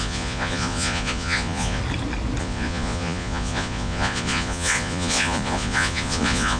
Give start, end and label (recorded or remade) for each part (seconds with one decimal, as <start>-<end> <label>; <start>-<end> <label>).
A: 0.0-1.8 remade; 1.8-2.4 recorded; 2.4-6.6 remade